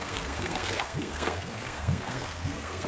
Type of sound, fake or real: fake